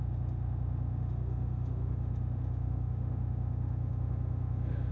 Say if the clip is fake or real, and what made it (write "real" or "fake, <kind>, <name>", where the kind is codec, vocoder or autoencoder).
fake, autoencoder, DAC-VAE